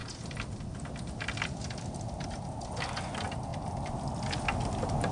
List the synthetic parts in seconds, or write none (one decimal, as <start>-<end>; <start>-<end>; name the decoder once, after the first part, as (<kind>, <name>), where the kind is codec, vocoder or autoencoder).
none